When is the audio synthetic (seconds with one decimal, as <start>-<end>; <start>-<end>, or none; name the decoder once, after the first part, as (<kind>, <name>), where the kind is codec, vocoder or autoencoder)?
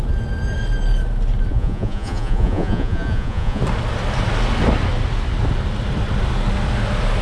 1.5-3.6 (vocoder, Vocos)